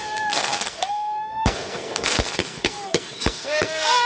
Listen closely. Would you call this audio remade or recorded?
remade